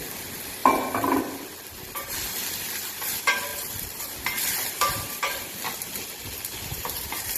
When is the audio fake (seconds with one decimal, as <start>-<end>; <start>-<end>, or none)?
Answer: 0.6-1.2; 3.5-5.5; 6.7-7.4